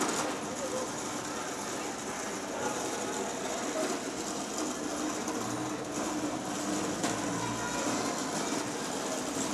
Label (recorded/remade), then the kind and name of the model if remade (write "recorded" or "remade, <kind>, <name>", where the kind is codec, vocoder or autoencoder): recorded